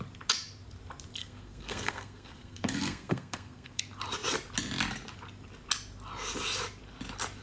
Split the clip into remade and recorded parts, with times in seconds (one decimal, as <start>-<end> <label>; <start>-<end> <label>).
0.0-1.2 recorded; 1.2-3.8 remade; 3.8-7.4 recorded